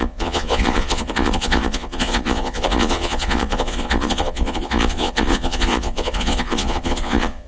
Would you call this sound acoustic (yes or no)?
no